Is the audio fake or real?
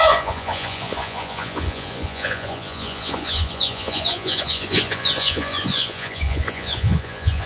fake